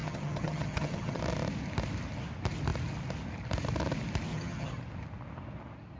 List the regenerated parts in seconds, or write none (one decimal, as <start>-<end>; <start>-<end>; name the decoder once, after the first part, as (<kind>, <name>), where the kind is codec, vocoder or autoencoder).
0.0-1.2 (vocoder, HiFi-GAN); 4.3-4.8